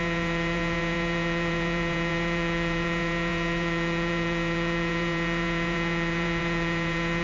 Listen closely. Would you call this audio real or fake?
fake